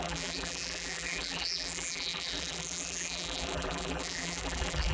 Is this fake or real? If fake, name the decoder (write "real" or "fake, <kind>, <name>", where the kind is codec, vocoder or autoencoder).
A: fake, vocoder, BigVGAN v2